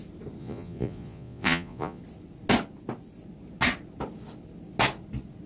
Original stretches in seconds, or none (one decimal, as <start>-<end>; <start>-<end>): 0.0-0.4; 2.0-5.5